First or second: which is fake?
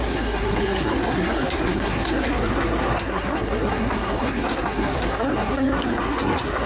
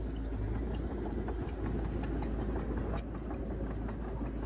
first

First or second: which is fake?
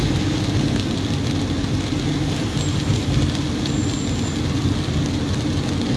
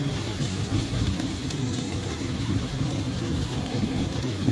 second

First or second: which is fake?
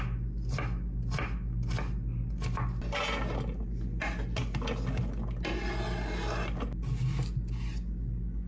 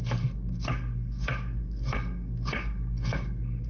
second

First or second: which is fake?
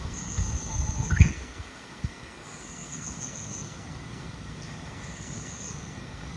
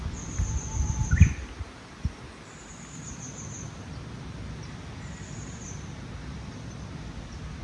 first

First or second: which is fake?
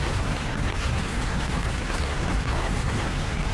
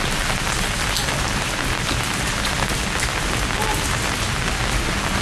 first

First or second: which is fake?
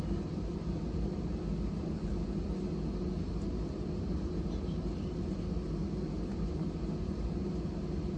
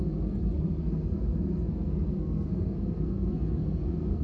second